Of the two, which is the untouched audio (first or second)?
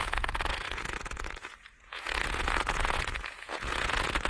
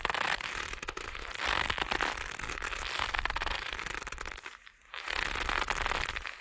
second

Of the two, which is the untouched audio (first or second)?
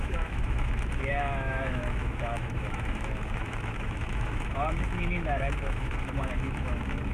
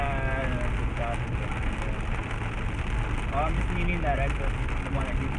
second